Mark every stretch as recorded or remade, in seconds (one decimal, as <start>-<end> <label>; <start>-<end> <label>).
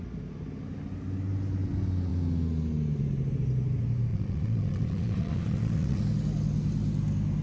0.0-4.1 recorded; 4.1-6.0 remade; 6.0-7.4 recorded